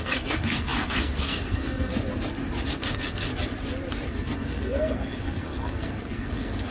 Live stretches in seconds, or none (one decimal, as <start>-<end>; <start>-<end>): 1.9-2.7; 3.3-4.1